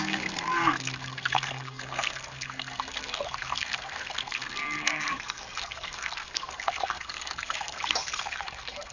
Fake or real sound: fake